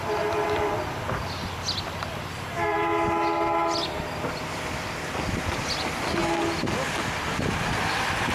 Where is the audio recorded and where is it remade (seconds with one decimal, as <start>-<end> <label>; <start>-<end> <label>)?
0.0-2.9 remade; 2.9-4.5 recorded; 4.5-6.2 remade; 6.2-8.3 recorded